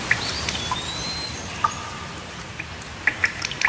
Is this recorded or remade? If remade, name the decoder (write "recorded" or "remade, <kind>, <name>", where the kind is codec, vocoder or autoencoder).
recorded